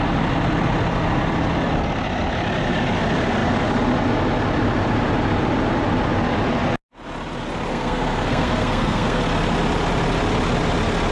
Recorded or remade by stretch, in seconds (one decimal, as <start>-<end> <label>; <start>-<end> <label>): 0.0-7.7 recorded; 7.7-9.2 remade; 9.2-11.1 recorded